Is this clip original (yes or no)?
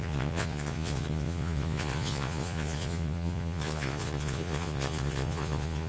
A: no